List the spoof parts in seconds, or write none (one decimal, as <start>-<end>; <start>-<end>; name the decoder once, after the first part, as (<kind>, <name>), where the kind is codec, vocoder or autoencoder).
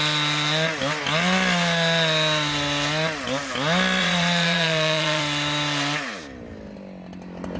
4.0-5.2 (vocoder, Vocos)